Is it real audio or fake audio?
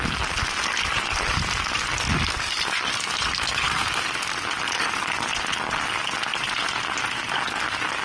real